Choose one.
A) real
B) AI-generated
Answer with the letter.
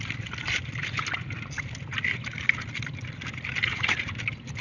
A